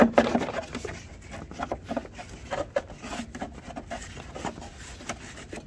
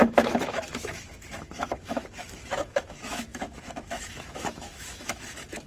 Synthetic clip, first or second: second